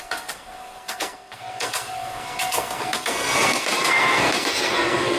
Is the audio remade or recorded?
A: remade